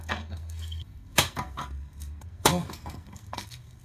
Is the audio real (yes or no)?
no